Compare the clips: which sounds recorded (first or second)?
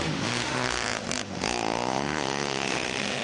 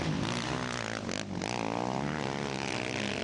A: second